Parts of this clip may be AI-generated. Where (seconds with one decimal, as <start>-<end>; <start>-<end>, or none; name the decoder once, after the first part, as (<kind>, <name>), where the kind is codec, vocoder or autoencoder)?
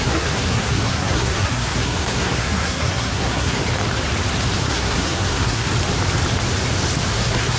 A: 0.0-3.6 (codec, SNAC); 4.6-5.7; 7.1-7.6